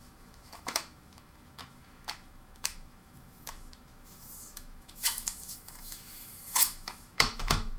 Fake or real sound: fake